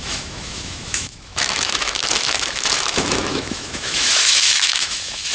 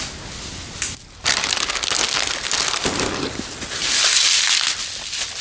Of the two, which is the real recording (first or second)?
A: second